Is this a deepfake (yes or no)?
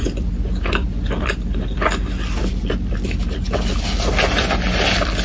no